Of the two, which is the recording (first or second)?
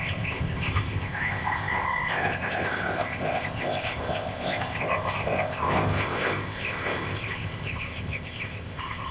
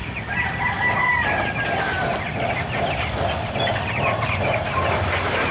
second